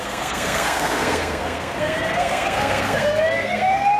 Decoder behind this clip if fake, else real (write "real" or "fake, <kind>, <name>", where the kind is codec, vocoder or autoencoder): fake, codec, SNAC